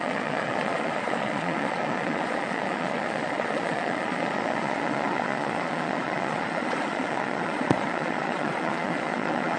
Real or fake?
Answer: fake